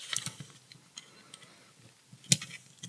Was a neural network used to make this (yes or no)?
no